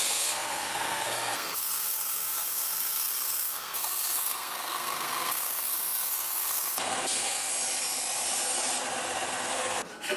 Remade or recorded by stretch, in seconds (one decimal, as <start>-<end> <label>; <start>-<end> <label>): 0.0-7.5 remade; 7.5-9.5 recorded; 9.5-10.2 remade